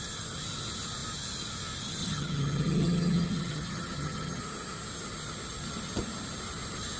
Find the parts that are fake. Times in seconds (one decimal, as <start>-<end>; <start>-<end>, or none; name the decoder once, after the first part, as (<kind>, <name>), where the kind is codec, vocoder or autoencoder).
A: 2.0-4.4 (vocoder, HiFi-GAN)